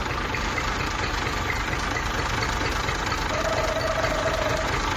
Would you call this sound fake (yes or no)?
no